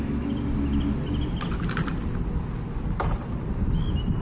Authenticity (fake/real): real